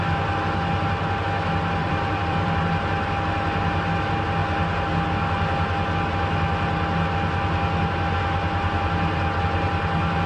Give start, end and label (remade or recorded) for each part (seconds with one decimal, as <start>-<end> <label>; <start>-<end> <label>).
0.0-1.8 recorded; 1.8-2.6 remade; 2.6-10.3 recorded